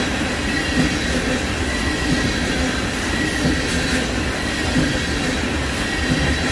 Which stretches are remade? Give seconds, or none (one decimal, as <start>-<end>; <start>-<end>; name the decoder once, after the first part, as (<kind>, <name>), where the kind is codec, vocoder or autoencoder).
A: none